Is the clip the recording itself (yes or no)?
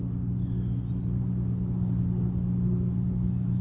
yes